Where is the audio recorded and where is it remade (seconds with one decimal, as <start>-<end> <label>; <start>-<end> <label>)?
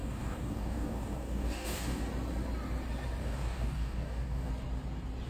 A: 0.0-2.0 remade; 2.0-3.2 recorded; 3.2-4.5 remade; 4.5-5.3 recorded